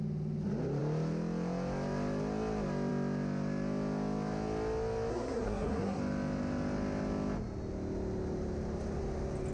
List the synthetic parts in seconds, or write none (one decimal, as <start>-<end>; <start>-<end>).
5.1-6.0